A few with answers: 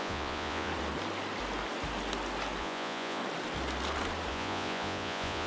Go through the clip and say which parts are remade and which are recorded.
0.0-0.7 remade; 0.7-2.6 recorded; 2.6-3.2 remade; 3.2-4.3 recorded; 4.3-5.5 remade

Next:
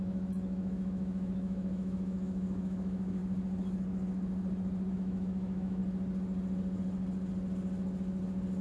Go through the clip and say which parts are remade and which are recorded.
0.0-3.2 remade; 3.2-4.9 recorded; 4.9-5.8 remade; 5.8-8.6 recorded

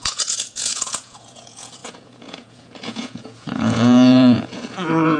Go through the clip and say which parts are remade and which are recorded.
0.0-5.2 remade

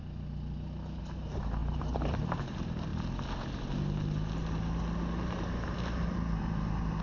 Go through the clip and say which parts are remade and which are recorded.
0.0-1.0 recorded; 1.0-2.9 remade; 2.9-5.2 recorded; 5.2-7.0 remade

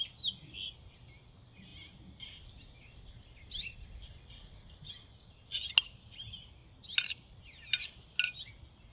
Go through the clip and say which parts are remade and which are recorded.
0.0-8.9 recorded